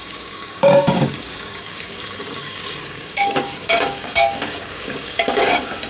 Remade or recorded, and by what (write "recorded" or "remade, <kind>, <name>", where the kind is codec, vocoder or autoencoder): remade, codec, DAC